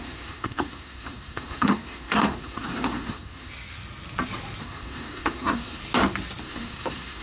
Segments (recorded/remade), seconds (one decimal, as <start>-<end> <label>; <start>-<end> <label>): 0.0-3.5 remade; 3.5-4.6 recorded; 4.6-5.8 remade; 5.8-6.4 recorded; 6.4-7.2 remade